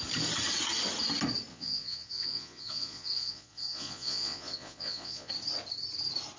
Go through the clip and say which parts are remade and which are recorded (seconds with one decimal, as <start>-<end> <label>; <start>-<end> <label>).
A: 0.0-1.5 recorded; 1.5-5.3 remade; 5.3-6.4 recorded